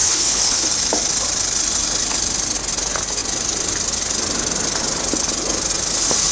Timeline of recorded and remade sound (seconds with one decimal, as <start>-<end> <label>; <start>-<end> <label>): 0.0-0.7 remade; 0.7-6.3 recorded